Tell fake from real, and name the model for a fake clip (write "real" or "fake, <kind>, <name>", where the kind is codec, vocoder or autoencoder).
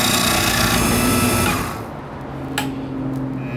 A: real